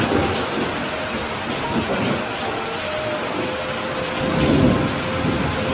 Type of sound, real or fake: real